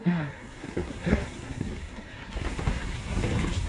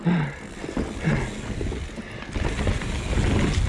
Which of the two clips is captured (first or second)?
second